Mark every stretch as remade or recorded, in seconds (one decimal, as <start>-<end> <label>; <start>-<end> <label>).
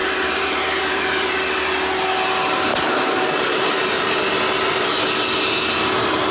0.0-1.3 remade; 1.3-2.7 recorded; 2.7-4.4 remade; 4.4-6.3 recorded